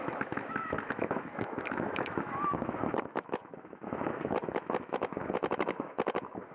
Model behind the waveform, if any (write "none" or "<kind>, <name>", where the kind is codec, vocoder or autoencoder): autoencoder, DAC-VAE